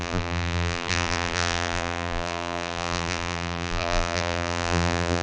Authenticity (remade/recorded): remade